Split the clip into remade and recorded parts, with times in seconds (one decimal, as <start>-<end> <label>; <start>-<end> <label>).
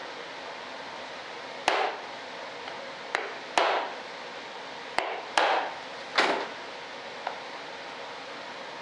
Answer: 0.0-8.8 recorded